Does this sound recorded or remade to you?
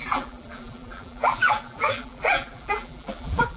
remade